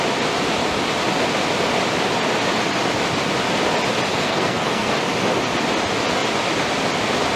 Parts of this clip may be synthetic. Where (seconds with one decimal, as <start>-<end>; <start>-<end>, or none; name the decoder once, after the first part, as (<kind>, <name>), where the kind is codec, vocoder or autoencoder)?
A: 4.1-5.0 (codec, SNAC)